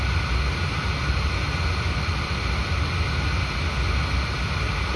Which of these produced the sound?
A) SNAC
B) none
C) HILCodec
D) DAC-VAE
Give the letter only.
B